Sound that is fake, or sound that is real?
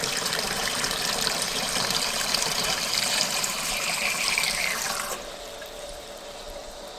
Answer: fake